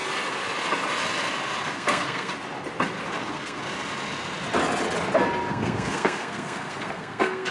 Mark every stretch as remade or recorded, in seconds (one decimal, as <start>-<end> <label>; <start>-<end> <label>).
0.0-1.7 recorded; 1.7-2.3 remade; 2.3-3.2 recorded; 3.2-3.6 remade; 3.6-5.5 recorded; 5.5-7.5 remade